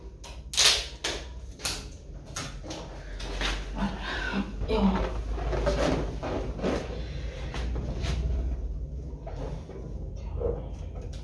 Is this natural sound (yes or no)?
yes